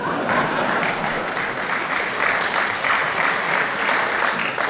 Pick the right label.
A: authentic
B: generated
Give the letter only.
A